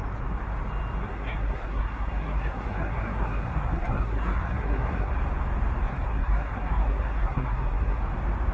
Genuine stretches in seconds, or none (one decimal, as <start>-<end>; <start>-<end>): 0.0-1.1; 5.1-5.9; 8.0-8.5